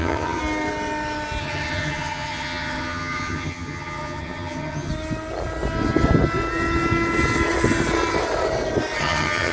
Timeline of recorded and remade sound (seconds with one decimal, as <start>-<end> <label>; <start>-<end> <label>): 0.0-0.4 remade; 0.4-1.4 recorded; 1.4-4.9 remade; 4.9-9.0 recorded; 9.0-9.5 remade